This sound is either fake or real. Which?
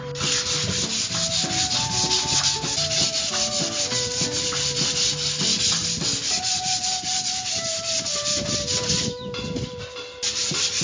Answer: real